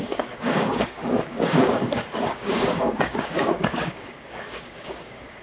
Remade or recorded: remade